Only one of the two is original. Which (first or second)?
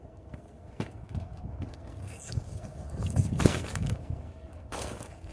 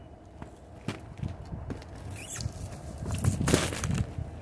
second